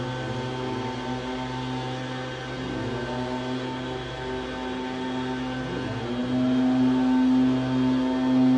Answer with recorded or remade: recorded